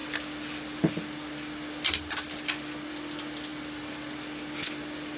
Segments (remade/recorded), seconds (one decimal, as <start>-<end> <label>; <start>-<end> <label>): 0.0-5.2 recorded